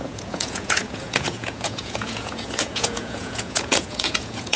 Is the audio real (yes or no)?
no